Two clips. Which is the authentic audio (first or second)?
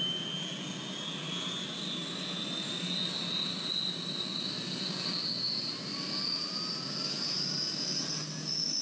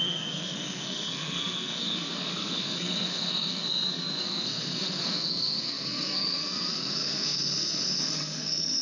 first